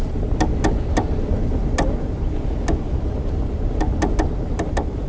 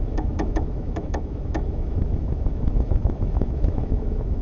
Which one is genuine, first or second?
first